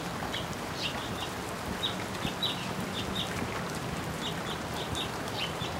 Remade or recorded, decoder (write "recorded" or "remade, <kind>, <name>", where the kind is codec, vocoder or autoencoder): recorded